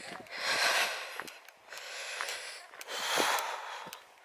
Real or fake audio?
real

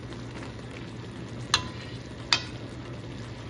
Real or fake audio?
real